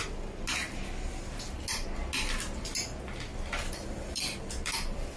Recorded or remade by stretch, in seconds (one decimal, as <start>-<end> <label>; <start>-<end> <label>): 0.0-5.2 recorded